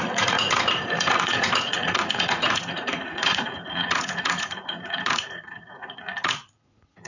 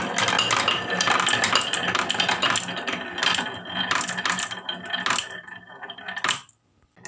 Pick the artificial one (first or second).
first